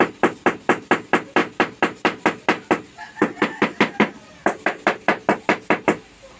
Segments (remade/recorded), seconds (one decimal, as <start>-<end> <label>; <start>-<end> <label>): 0.0-6.4 recorded